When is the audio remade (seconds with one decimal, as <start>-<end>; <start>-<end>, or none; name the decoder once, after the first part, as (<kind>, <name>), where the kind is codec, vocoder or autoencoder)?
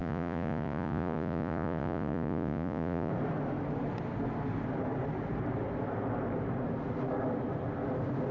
0.0-3.1 (vocoder, Vocos)